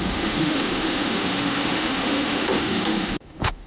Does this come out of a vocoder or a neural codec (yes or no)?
yes